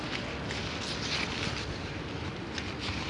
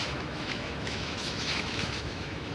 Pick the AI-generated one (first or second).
second